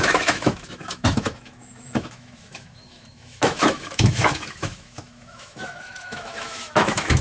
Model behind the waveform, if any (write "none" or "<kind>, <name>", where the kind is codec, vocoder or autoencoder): autoencoder, DAC-VAE